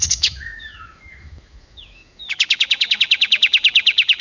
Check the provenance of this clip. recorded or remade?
remade